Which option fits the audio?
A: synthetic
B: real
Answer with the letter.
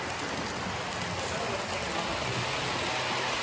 B